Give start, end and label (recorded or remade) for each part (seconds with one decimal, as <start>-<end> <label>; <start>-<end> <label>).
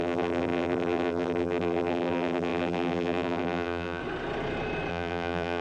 0.0-4.0 remade; 4.0-4.9 recorded; 4.9-5.6 remade